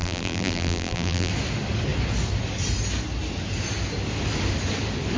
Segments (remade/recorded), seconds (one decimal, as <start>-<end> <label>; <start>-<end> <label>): 0.0-1.3 remade; 1.3-5.2 recorded